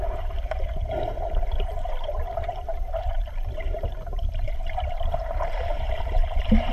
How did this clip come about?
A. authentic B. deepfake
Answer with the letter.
B